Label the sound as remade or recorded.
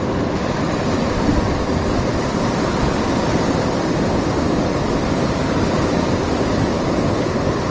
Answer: recorded